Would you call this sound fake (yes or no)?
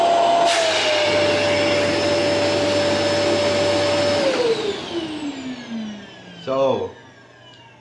no